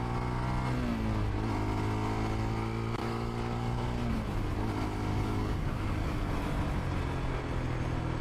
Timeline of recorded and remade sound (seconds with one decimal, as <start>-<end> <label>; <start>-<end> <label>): 0.0-3.0 recorded; 3.0-4.1 remade; 4.1-5.1 recorded; 5.1-6.3 remade; 6.3-8.2 recorded